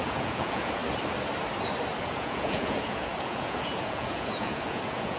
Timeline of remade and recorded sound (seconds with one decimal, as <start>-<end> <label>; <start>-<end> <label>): 0.0-0.8 remade; 0.8-2.0 recorded; 2.0-5.2 remade